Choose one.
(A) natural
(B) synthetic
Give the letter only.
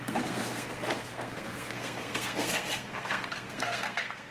B